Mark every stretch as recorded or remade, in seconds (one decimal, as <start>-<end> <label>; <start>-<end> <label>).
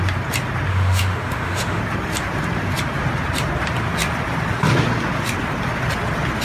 0.0-0.7 recorded; 0.7-1.8 remade; 1.8-6.4 recorded